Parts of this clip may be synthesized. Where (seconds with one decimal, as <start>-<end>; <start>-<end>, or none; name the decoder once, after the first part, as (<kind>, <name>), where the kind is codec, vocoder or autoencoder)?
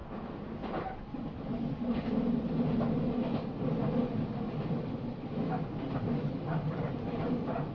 none